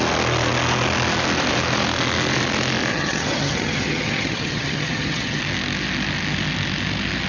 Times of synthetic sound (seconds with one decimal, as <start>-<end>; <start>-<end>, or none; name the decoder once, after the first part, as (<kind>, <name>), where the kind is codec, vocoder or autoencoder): 2.9-5.4 (vocoder, HiFi-GAN)